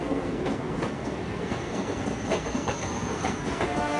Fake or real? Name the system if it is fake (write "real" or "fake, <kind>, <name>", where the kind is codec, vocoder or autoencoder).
fake, codec, SNAC